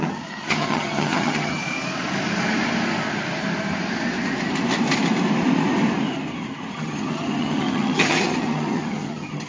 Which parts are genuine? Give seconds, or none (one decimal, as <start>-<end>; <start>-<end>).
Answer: 1.6-6.7